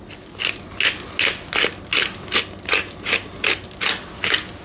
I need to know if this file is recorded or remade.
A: recorded